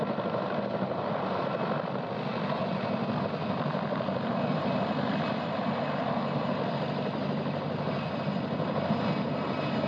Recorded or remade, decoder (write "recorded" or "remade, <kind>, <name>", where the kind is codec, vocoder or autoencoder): recorded